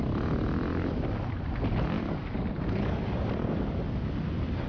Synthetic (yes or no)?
no